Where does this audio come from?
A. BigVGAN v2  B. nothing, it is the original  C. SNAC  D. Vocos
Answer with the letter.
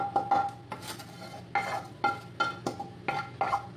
B